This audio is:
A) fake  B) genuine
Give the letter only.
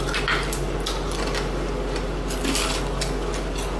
A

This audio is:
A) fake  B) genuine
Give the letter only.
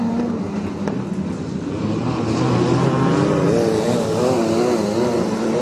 B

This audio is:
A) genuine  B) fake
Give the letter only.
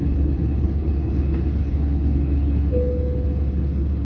B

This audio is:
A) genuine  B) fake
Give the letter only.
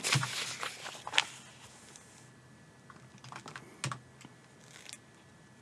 A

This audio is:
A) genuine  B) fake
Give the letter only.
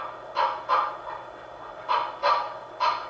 A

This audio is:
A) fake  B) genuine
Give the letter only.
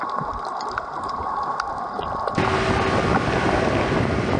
B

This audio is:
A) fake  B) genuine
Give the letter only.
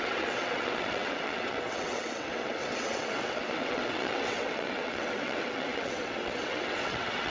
A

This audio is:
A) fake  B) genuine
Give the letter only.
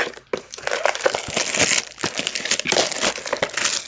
B